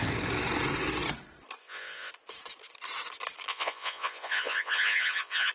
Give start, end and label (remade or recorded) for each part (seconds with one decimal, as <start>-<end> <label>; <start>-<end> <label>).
0.0-1.6 recorded; 1.6-2.1 remade; 2.1-3.5 recorded; 3.5-5.5 remade